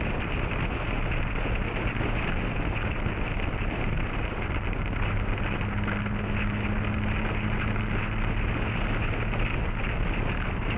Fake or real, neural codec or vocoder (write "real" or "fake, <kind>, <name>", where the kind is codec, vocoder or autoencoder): real